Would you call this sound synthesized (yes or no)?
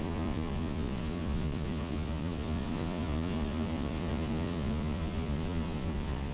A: yes